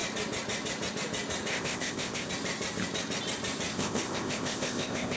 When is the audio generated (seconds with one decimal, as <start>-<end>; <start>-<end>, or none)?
1.5-2.3; 3.7-5.2